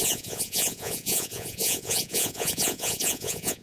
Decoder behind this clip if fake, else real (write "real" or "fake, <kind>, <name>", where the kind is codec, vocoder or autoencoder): fake, vocoder, Vocos